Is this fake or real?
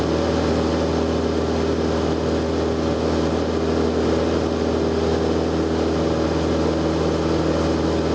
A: real